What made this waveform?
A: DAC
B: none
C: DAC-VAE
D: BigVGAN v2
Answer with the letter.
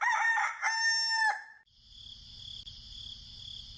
B